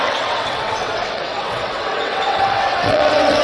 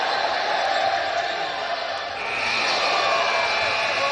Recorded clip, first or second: second